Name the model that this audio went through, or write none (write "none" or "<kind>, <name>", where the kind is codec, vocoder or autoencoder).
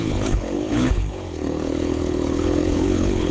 codec, HILCodec